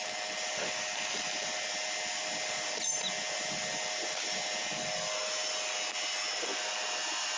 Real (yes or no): yes